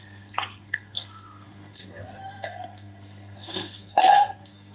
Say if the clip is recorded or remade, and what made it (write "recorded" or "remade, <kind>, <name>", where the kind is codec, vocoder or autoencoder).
remade, codec, SNAC